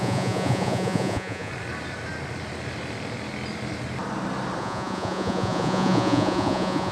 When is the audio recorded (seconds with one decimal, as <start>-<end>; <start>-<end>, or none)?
1.5-4.6